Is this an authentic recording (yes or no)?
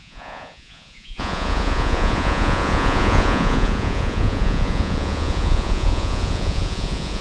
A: no